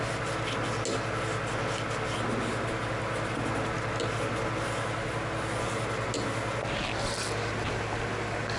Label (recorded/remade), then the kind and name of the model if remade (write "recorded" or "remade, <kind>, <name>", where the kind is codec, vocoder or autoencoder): recorded